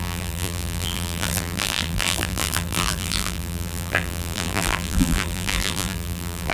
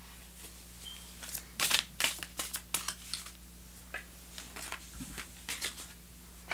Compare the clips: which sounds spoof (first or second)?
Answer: first